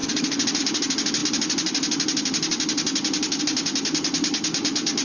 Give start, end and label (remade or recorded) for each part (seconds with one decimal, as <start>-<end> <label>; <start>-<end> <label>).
0.0-5.0 recorded